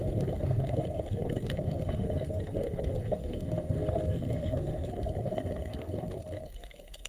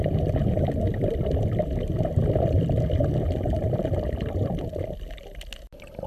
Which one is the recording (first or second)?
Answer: second